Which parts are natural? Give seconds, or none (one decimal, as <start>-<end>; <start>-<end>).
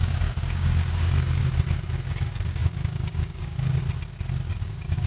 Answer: 1.4-2.1; 3.8-4.5